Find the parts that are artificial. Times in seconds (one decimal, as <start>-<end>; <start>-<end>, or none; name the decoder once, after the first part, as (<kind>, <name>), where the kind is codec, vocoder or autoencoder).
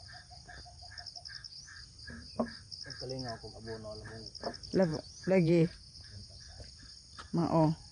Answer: 4.9-6.4 (vocoder, Vocos)